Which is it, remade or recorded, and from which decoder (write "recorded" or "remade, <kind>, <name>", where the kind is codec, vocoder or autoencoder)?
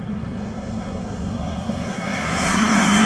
remade, codec, SNAC